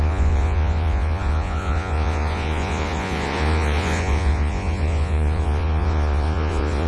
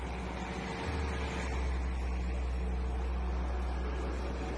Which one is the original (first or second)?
second